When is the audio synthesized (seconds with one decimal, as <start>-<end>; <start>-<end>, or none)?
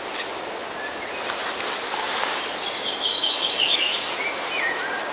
3.1-4.0